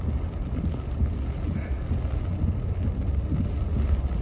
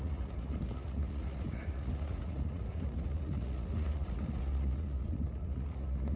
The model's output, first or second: second